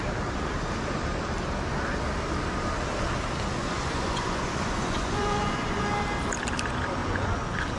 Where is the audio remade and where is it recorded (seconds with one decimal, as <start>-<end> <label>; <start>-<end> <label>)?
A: 0.0-3.6 recorded; 3.6-5.8 remade; 5.8-7.0 recorded; 7.0-7.8 remade